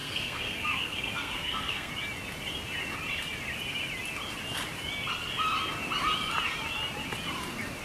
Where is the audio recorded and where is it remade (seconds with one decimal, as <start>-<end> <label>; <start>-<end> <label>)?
0.0-1.9 remade; 1.9-7.8 recorded